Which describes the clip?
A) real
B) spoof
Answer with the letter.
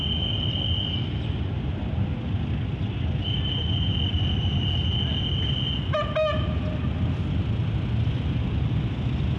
A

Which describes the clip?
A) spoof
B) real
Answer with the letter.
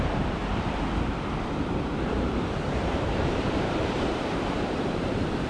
A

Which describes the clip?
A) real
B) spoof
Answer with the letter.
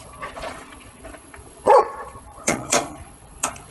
B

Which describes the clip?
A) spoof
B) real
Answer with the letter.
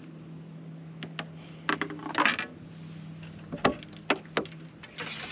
B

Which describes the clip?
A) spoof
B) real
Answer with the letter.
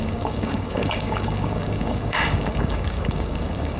A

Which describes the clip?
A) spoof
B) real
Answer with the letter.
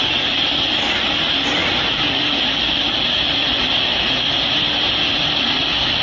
B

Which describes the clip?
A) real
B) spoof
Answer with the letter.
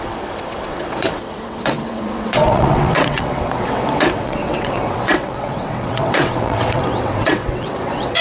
B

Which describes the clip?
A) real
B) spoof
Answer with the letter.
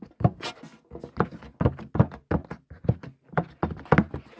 A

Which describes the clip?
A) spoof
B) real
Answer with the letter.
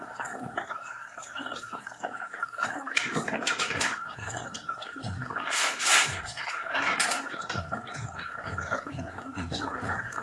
A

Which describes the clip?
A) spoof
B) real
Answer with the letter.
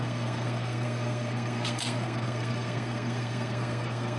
A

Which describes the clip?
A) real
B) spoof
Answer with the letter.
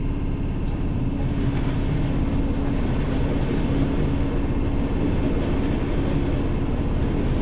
A